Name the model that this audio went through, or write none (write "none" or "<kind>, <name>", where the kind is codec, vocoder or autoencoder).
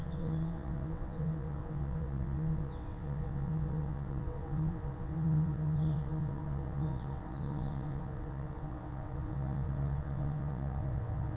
vocoder, WaveNeXt